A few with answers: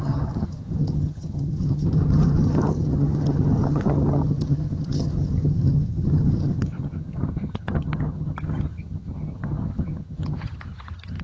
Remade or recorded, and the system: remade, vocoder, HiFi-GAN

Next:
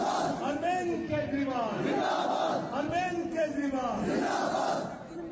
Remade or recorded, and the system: recorded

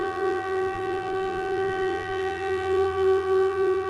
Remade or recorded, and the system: remade, vocoder, BigVGAN v2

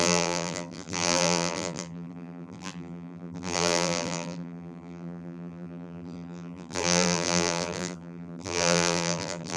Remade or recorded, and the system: remade, vocoder, BigVGAN v2